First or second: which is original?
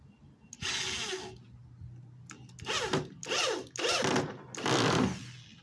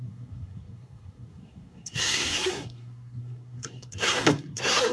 first